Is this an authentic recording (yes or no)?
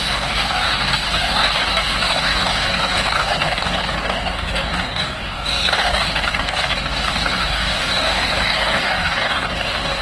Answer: no